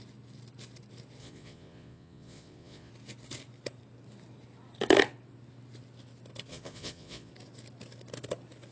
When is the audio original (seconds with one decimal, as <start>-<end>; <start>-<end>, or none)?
0.0-1.2; 2.9-6.5; 7.3-8.7